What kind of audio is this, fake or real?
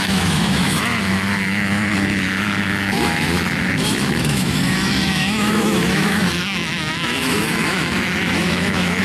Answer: fake